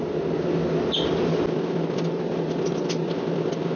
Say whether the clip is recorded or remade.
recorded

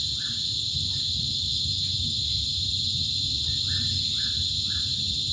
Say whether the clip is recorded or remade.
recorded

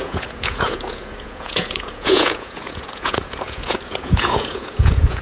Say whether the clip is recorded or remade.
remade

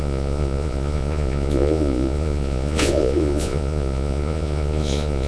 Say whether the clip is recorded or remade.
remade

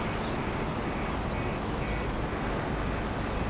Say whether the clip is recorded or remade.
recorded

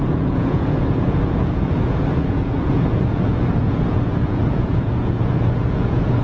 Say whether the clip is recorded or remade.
remade